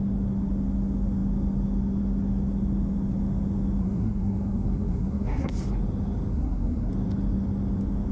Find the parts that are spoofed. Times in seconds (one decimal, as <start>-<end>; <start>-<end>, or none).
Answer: 3.8-5.5; 6.3-6.9